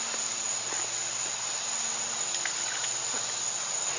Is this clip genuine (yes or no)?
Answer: yes